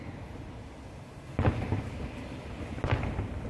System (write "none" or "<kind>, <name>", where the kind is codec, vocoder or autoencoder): none